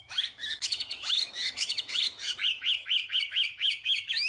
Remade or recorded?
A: remade